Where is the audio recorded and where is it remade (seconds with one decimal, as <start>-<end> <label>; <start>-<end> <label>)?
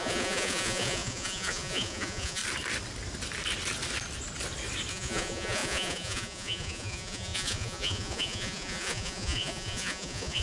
0.0-2.4 remade; 2.4-4.9 recorded; 4.9-10.4 remade